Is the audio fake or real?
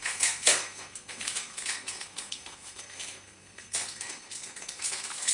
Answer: fake